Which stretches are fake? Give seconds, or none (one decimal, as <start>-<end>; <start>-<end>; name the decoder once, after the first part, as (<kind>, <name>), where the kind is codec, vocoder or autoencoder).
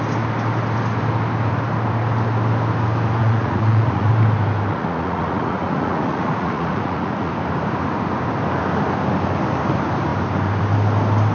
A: 3.2-4.1 (vocoder, Vocos); 4.7-7.3